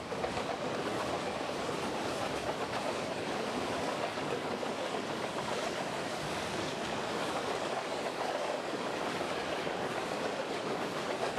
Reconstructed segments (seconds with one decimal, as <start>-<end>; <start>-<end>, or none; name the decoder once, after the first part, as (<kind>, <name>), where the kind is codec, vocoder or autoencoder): 0.0-11.4 (codec, DAC)